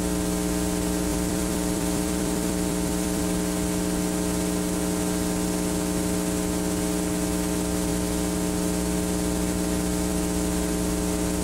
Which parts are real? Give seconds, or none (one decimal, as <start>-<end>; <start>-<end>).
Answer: 0.0-1.1; 3.2-11.4